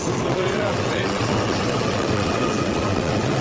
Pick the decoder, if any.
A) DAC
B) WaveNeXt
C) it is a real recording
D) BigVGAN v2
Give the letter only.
B